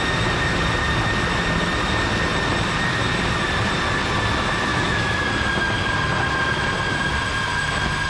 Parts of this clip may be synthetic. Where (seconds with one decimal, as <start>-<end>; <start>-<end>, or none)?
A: 4.7-5.3